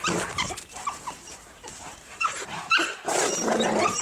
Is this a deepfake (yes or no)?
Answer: yes